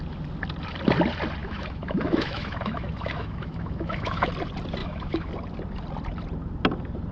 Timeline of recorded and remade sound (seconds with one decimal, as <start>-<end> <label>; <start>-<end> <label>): 0.0-1.4 recorded; 1.4-4.3 remade; 4.3-4.8 recorded; 4.8-5.3 remade; 5.3-7.1 recorded